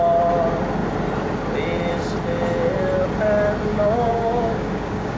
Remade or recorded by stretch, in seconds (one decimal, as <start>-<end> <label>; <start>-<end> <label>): 0.0-3.7 recorded; 3.7-5.2 remade